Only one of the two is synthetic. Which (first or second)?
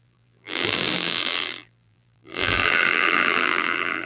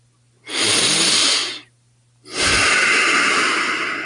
first